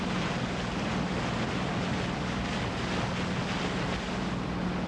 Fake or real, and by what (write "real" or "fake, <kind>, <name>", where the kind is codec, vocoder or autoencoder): real